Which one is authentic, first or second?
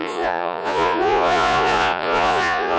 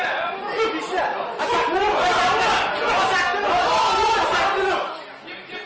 second